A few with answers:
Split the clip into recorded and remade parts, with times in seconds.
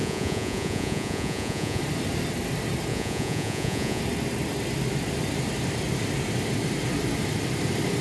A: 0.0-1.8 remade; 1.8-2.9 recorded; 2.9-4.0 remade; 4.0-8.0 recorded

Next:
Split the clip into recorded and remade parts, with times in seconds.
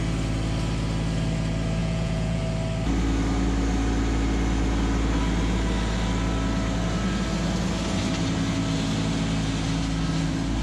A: 0.0-1.8 recorded; 1.8-2.4 remade; 2.4-10.6 recorded